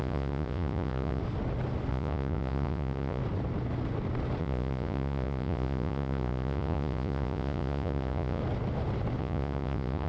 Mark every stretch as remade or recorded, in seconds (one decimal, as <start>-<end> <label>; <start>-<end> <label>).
0.0-1.2 remade; 1.2-1.9 recorded; 1.9-3.2 remade; 3.2-4.4 recorded; 4.4-8.4 remade; 8.4-9.2 recorded; 9.2-10.1 remade